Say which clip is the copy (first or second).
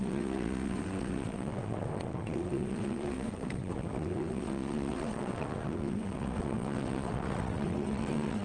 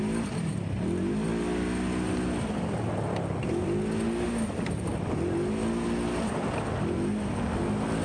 first